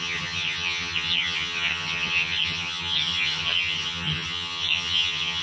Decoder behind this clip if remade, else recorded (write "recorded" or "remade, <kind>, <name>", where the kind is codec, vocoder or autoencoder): remade, vocoder, HiFi-GAN